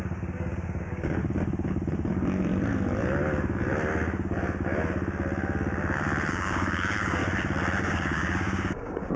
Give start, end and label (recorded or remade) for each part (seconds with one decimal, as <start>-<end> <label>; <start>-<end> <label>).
0.0-1.2 remade; 1.2-6.3 recorded; 6.3-7.2 remade; 7.2-7.8 recorded; 7.8-9.2 remade